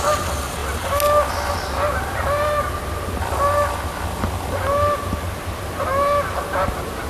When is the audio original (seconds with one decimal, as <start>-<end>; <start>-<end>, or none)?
0.0-7.1